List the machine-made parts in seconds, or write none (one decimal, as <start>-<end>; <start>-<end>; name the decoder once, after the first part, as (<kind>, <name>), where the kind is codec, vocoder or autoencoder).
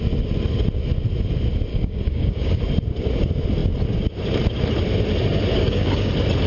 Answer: 1.7-2.6 (codec, DAC); 5.5-6.1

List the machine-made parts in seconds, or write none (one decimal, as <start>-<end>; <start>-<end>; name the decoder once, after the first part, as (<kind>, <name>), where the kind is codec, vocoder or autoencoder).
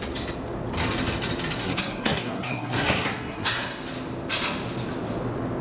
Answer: 1.6-3.8 (codec, SNAC)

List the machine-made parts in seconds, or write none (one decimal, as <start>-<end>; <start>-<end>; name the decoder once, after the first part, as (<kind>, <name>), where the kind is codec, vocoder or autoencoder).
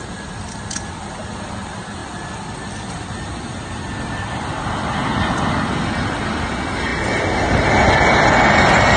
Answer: none